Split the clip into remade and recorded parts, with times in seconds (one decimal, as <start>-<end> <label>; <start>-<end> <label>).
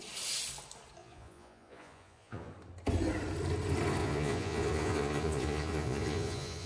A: 0.0-1.0 recorded; 1.0-2.5 remade; 2.5-4.0 recorded; 4.0-6.7 remade